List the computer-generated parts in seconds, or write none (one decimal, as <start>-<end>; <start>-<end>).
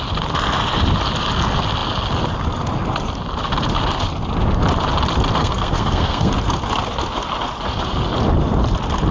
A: 5.4-6.3